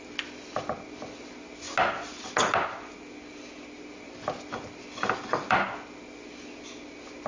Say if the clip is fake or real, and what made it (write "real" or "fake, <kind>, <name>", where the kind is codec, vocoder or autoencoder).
real